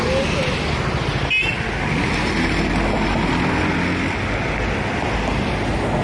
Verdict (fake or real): real